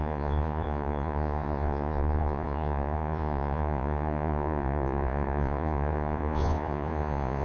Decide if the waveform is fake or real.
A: fake